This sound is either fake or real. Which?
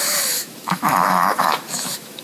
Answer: fake